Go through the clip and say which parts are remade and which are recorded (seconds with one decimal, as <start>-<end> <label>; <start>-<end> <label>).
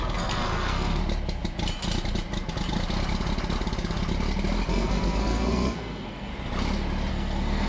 0.0-1.0 remade; 1.0-4.7 recorded; 4.7-6.3 remade; 6.3-7.1 recorded; 7.1-7.7 remade